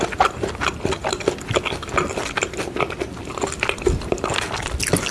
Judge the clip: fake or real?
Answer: real